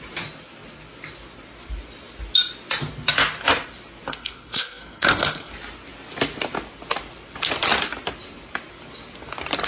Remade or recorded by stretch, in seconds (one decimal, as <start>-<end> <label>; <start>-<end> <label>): 0.0-4.1 recorded; 4.1-5.5 remade; 5.5-9.7 recorded